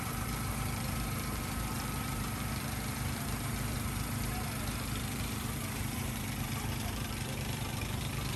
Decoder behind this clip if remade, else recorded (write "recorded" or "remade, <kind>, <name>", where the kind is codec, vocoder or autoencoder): remade, vocoder, BigVGAN v2